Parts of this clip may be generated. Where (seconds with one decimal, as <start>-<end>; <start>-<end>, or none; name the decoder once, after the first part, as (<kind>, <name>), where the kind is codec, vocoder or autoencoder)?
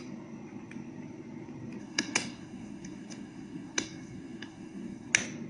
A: 1.8-5.1 (codec, SNAC)